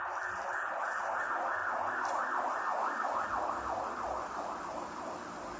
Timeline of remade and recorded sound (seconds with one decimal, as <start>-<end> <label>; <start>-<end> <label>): 0.0-5.6 recorded